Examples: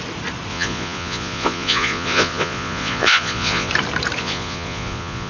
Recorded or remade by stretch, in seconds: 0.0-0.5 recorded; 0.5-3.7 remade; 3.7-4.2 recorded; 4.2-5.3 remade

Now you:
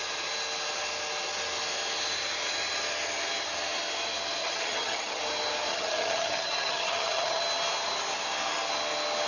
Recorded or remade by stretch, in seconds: 0.0-4.4 recorded; 4.4-5.2 remade; 5.2-5.7 recorded; 5.7-7.4 remade; 7.4-9.3 recorded

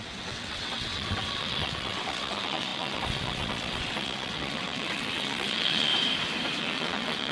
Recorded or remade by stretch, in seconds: 0.0-5.9 remade; 5.9-6.6 recorded; 6.6-7.3 remade

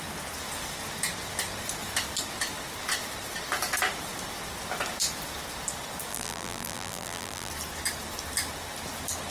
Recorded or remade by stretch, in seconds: 0.0-6.1 recorded; 6.1-7.5 remade; 7.5-9.3 recorded

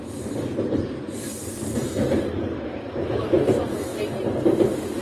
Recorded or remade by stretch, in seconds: 0.0-1.3 remade; 1.3-2.2 recorded; 2.2-3.9 remade; 3.9-4.4 recorded; 4.4-5.0 remade

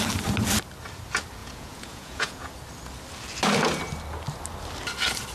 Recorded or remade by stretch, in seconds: 0.0-1.4 recorded; 1.4-2.5 remade; 2.5-5.3 recorded

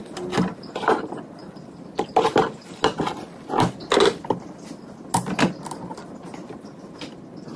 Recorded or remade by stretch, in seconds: 0.0-7.6 recorded